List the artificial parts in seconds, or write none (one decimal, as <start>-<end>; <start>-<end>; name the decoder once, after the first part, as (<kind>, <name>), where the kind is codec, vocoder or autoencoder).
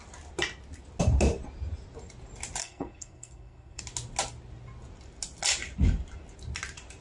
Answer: 2.6-3.8 (codec, SNAC)